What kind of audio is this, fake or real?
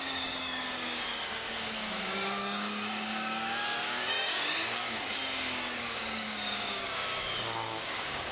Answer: fake